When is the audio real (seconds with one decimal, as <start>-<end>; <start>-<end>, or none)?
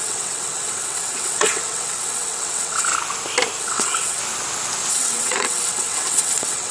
2.9-3.6; 4.2-4.9